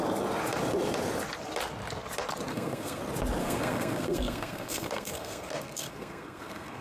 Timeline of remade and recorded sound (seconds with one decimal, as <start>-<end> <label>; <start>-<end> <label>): 0.0-2.5 recorded; 2.5-3.0 remade; 3.0-3.4 recorded; 3.4-6.8 remade